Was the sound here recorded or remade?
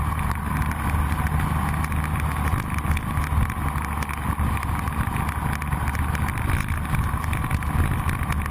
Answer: recorded